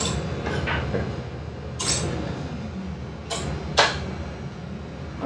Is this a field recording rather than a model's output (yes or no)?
yes